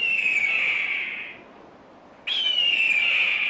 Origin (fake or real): real